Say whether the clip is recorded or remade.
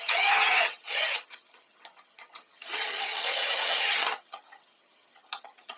remade